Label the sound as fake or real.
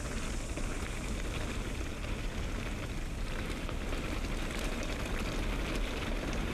real